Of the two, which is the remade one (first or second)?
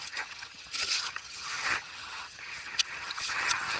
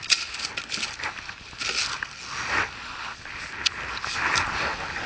first